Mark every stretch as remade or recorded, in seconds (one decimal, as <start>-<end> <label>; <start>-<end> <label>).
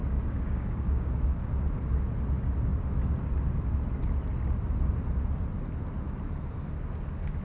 0.0-1.5 remade; 1.5-7.4 recorded